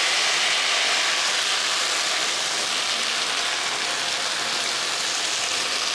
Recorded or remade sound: recorded